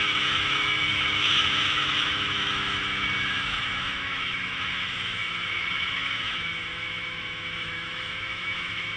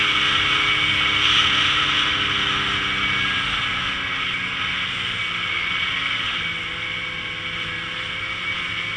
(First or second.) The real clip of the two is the second